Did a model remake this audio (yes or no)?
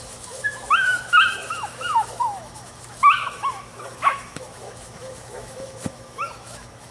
yes